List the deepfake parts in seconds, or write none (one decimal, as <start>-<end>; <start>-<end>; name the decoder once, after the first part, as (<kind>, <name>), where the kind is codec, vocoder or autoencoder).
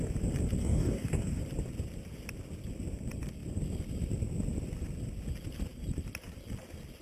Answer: 0.6-1.4 (codec, DAC)